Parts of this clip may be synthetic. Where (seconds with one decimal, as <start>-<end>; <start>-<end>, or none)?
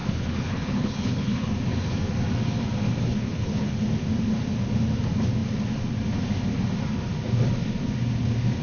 0.0-1.5; 3.1-3.8